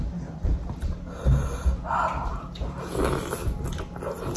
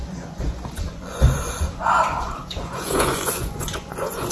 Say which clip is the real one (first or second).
first